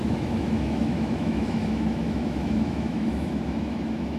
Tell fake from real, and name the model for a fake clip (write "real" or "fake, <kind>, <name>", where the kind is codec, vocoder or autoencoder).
fake, autoencoder, DAC-VAE